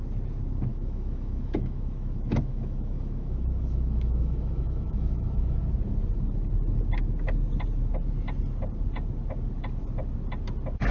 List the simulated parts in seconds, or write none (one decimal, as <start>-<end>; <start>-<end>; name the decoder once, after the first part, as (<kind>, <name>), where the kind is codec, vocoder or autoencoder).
0.7-5.6 (autoencoder, DAC-VAE)